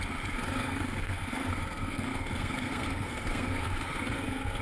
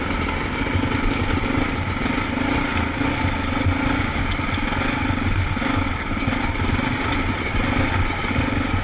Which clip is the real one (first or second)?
second